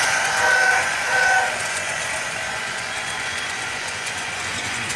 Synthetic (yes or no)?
yes